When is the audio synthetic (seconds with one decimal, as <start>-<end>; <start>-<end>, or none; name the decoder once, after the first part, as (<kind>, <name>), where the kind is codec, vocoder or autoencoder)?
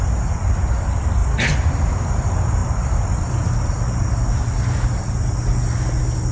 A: none